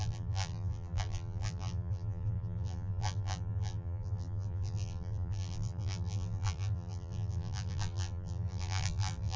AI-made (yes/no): yes